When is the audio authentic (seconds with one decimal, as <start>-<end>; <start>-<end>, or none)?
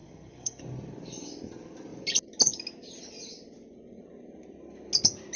0.6-5.4